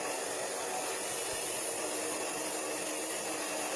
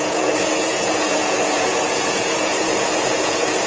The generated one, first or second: second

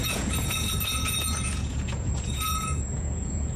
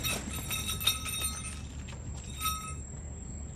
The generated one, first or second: first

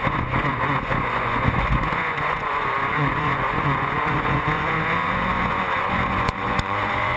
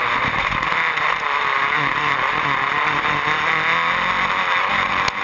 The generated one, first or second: first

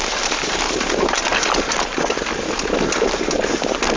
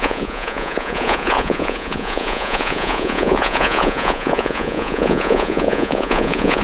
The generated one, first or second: second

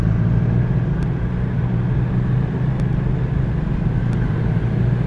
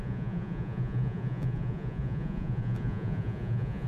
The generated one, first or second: second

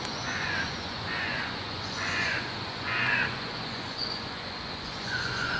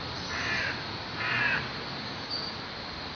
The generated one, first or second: first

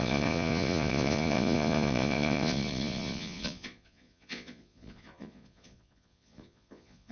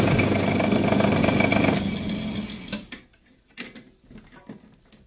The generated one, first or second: first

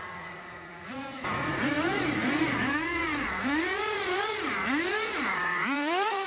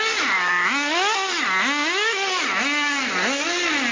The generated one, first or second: first